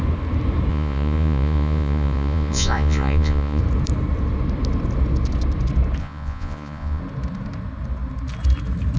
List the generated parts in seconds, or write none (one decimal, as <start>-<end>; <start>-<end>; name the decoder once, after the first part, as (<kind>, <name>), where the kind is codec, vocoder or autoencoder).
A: 0.7-3.6 (vocoder, Vocos); 6.0-7.0